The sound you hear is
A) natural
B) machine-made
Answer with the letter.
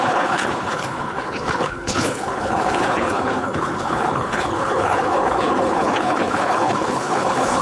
B